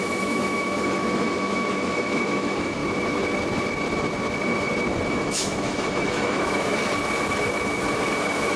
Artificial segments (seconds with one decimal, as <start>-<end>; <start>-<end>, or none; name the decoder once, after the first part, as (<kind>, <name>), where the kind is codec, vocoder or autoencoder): 0.0-2.8 (autoencoder, DAC-VAE); 5.1-6.7; 8.1-8.6